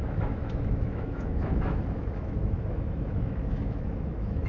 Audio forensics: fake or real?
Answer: fake